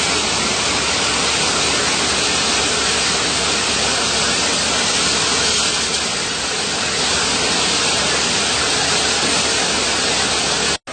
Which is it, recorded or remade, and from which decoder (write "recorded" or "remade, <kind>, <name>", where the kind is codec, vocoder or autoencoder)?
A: recorded